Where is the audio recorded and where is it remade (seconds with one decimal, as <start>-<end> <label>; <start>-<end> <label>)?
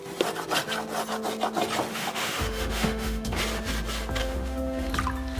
0.0-1.9 recorded; 1.9-3.4 remade; 3.4-4.2 recorded; 4.2-4.9 remade; 4.9-5.4 recorded